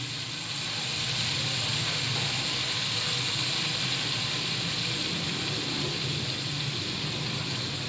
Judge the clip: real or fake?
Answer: real